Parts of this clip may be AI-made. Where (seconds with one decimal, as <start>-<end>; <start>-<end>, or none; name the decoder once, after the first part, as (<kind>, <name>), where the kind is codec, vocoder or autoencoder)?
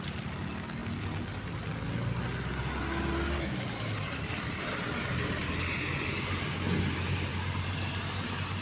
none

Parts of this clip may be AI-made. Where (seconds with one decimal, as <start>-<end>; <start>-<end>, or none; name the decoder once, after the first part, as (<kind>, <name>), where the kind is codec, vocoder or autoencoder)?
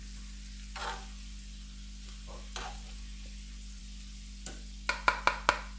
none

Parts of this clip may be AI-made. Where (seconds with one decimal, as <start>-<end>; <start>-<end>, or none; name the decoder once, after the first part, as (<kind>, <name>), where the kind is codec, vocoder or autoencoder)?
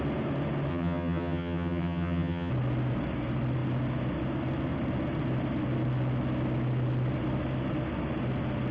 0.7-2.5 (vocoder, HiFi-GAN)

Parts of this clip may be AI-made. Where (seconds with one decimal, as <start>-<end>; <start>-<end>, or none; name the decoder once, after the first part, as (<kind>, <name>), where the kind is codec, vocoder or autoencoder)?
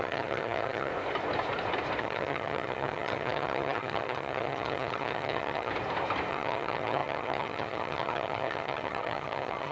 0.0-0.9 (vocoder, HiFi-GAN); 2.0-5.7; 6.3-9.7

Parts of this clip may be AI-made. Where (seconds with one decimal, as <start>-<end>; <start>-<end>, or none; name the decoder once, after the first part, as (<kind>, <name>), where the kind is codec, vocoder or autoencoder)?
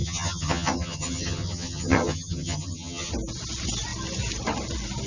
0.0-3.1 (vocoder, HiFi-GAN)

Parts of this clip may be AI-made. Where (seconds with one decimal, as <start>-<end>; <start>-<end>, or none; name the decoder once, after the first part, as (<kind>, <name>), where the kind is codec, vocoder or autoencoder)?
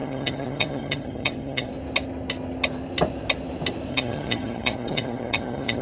0.0-1.7 (vocoder, HiFi-GAN); 3.9-5.8